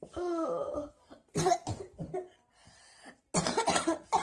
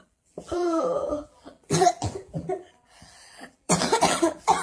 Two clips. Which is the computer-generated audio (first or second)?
second